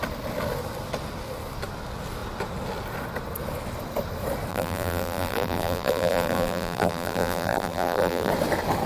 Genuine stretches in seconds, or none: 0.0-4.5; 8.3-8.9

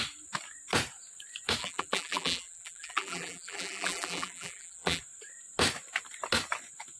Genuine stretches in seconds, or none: 0.0-1.6; 5.0-7.0